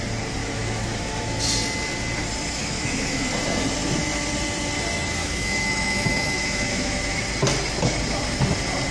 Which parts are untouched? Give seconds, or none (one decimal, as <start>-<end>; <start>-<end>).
0.0-0.4; 1.4-2.6; 3.3-5.2; 7.2-8.9